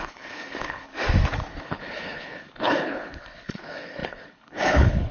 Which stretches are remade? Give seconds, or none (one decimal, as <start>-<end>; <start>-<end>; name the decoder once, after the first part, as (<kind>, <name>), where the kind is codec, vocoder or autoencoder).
0.0-0.9 (codec, HILCodec); 1.6-5.1